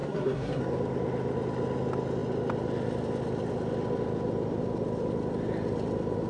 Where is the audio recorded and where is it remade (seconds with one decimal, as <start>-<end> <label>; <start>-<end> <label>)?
0.0-0.6 remade; 0.6-6.3 recorded